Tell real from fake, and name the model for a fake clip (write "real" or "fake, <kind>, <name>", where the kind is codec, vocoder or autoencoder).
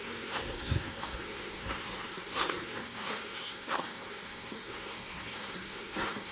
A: fake, codec, SNAC